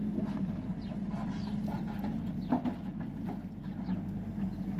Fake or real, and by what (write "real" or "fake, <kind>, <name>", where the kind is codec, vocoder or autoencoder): real